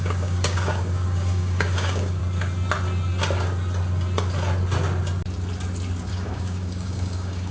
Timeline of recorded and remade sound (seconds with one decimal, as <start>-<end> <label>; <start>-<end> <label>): 0.0-2.2 remade; 2.2-6.1 recorded; 6.1-7.5 remade